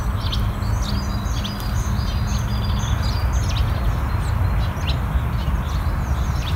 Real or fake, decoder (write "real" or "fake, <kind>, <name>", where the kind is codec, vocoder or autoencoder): real